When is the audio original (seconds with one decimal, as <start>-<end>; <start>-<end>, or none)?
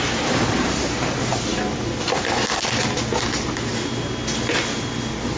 0.0-5.4